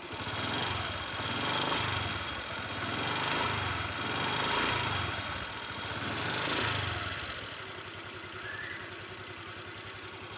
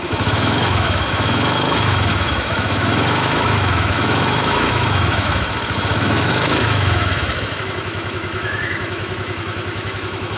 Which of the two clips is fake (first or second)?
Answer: second